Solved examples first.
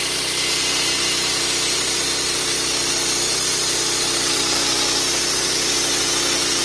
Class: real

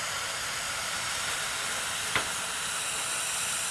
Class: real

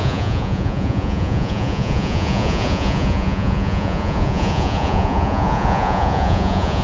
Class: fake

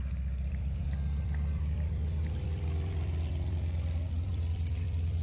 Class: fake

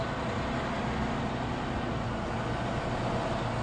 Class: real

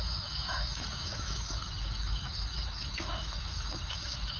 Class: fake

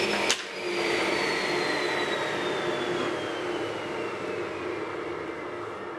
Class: real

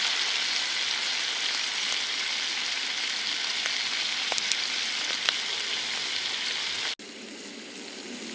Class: real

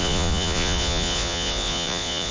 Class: fake